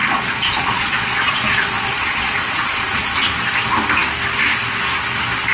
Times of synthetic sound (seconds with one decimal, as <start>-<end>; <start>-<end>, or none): 0.0-3.3